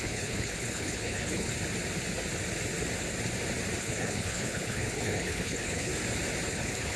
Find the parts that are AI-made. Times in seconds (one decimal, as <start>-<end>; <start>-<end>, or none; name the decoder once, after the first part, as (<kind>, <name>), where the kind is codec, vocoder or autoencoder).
0.0-1.5 (codec, HILCodec); 3.8-5.9; 6.5-7.0